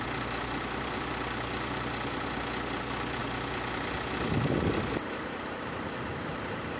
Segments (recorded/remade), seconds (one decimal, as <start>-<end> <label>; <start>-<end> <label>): 0.0-6.8 recorded